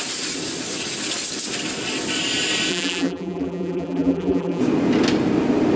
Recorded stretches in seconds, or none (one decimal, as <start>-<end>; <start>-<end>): 0.0-2.7; 4.6-5.8